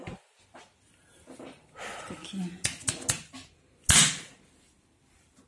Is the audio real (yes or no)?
yes